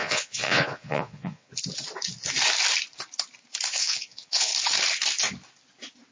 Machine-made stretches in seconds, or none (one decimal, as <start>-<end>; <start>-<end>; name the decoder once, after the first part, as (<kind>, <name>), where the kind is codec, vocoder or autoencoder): 0.0-1.5 (vocoder, Vocos); 3.7-4.5